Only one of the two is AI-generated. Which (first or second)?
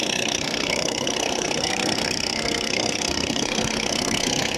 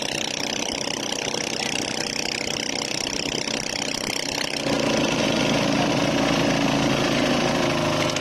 first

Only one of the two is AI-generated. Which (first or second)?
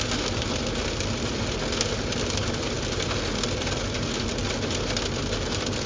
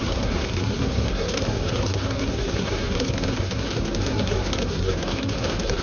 second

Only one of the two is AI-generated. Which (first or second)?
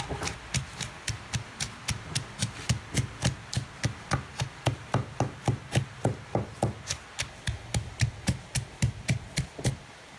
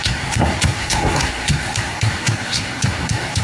second